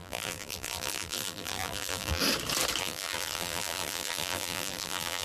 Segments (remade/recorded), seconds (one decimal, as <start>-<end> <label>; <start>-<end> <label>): 0.0-2.2 remade; 2.2-2.8 recorded; 2.8-5.2 remade